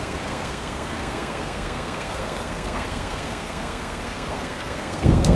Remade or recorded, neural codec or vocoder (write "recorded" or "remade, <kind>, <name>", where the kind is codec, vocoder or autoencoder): remade, codec, SNAC